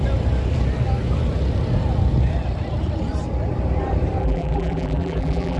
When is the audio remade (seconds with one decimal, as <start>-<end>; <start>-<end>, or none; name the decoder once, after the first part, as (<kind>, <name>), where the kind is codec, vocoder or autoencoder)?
4.2-5.6 (vocoder, BigVGAN v2)